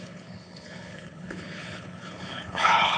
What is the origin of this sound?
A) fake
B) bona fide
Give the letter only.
A